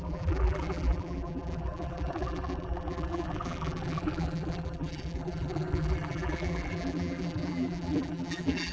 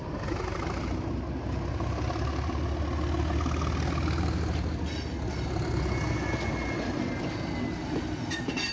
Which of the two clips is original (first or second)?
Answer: second